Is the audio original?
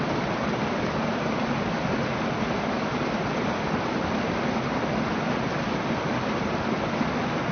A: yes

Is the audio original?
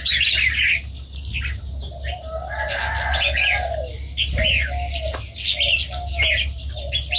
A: yes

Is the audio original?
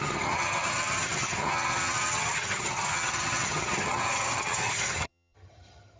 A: no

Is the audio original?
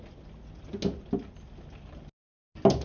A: yes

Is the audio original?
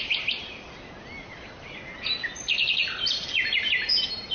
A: yes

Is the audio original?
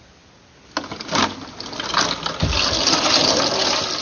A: yes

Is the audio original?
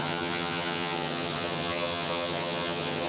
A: no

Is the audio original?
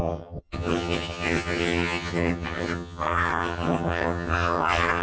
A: no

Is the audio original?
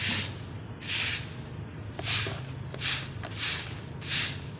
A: yes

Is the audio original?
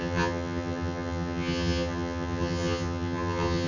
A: no